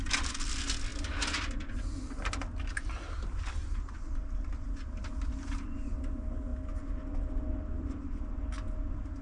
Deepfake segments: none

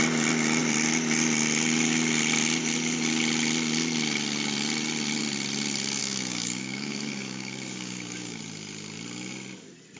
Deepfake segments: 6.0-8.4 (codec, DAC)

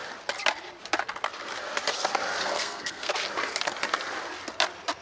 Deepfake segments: 2.4-3.1 (codec, SNAC)